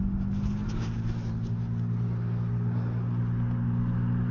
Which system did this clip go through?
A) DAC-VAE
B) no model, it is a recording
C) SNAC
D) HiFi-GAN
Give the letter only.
B